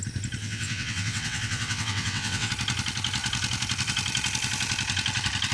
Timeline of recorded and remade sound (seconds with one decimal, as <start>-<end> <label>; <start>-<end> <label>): 0.0-0.4 recorded; 0.4-2.5 remade; 2.5-5.5 recorded